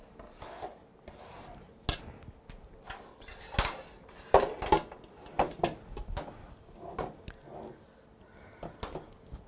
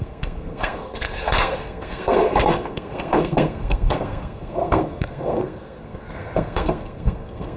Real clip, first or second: first